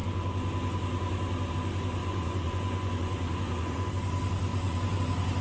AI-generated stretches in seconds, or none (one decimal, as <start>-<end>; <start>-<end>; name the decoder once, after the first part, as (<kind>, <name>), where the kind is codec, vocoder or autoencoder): 2.0-3.9 (vocoder, Vocos); 4.5-5.0